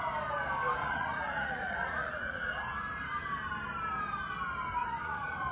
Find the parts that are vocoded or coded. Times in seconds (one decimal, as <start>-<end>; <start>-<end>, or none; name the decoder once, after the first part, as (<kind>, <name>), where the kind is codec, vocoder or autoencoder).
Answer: 0.8-2.6 (vocoder, Vocos); 4.8-5.5

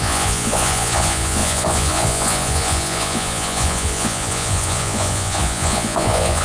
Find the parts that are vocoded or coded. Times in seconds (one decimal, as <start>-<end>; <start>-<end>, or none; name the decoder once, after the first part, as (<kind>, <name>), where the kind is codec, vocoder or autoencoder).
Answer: 0.0-6.4 (vocoder, Vocos)